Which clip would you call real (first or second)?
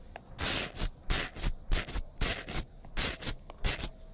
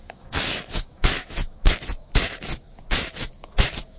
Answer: first